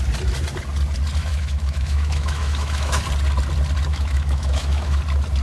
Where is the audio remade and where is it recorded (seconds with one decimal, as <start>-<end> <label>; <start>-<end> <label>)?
0.0-1.2 recorded; 1.2-3.0 remade; 3.0-3.9 recorded; 3.9-5.0 remade; 5.0-5.4 recorded